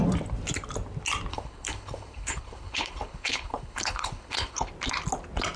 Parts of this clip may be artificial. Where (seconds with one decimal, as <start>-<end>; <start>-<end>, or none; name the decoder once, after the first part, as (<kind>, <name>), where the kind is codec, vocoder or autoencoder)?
1.3-4.7 (codec, HILCodec)